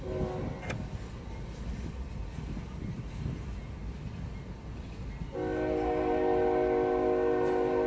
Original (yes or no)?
yes